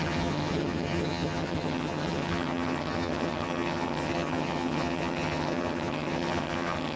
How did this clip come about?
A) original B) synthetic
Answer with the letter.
B